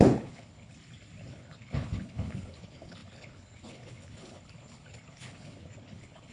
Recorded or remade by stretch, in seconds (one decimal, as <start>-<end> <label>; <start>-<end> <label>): 0.0-0.7 remade; 0.7-1.3 recorded; 1.3-6.3 remade